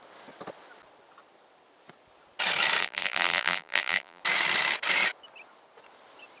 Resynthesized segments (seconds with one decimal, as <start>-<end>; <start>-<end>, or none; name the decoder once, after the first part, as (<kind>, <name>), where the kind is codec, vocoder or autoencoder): 2.8-4.2 (vocoder, BigVGAN v2)